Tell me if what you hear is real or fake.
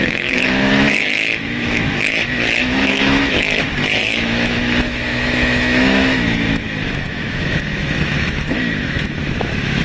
fake